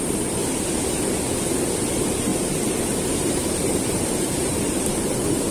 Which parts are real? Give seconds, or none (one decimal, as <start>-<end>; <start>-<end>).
0.4-1.9